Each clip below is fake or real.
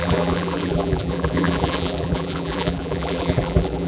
fake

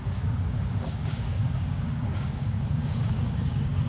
fake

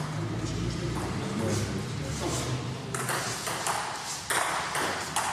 real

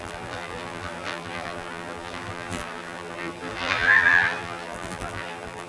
fake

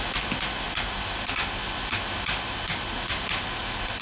real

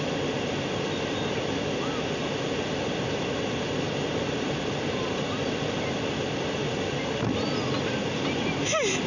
real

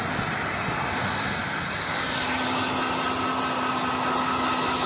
real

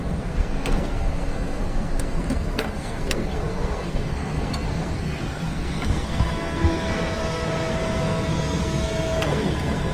fake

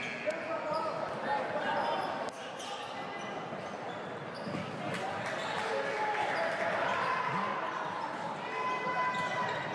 real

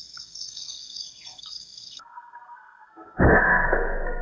fake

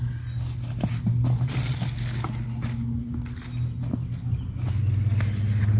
real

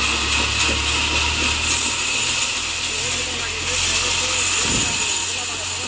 real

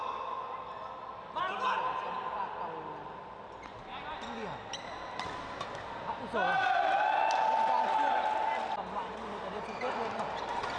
real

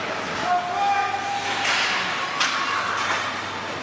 real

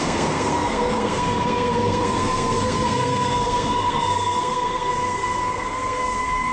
fake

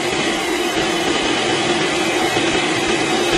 real